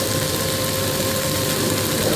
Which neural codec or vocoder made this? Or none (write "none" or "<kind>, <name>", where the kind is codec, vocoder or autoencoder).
none